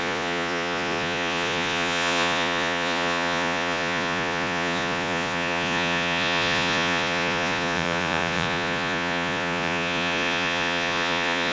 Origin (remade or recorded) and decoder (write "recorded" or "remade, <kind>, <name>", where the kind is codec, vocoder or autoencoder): remade, vocoder, Vocos